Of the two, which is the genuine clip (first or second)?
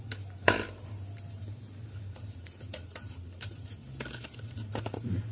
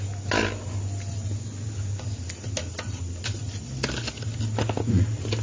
second